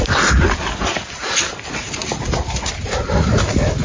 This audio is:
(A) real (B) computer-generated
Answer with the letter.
A